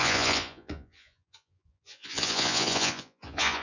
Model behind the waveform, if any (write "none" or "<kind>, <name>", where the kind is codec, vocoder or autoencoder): vocoder, Vocos